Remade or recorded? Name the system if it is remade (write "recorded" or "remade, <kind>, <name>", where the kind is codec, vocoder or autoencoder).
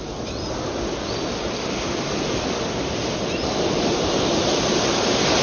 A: recorded